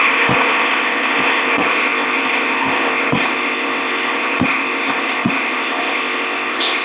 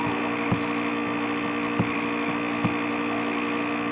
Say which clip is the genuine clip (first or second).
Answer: second